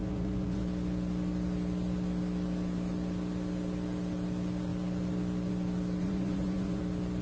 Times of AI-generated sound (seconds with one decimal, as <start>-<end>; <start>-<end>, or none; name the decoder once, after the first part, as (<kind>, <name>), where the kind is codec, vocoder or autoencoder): 0.0-0.6 (vocoder, Vocos); 6.0-6.8